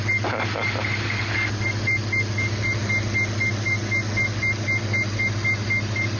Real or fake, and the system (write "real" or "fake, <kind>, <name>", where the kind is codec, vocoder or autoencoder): real